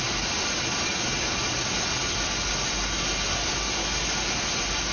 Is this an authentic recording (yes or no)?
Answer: yes